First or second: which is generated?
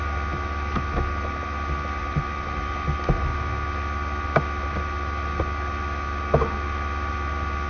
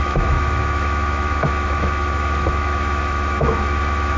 second